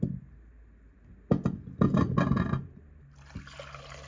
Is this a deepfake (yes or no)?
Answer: no